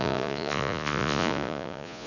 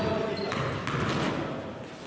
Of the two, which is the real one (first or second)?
second